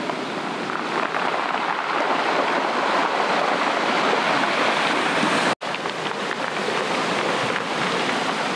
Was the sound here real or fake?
real